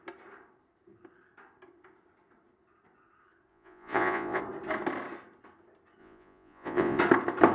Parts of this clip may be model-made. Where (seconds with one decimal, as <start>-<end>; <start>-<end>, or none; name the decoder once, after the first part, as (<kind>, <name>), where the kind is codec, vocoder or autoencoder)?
3.5-4.4 (vocoder, Vocos); 6.0-7.0